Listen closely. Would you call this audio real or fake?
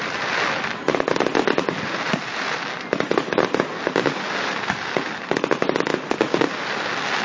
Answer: real